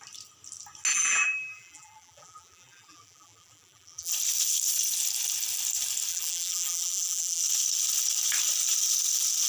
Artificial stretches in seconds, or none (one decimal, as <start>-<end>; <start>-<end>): 0.9-4.1; 6.1-7.4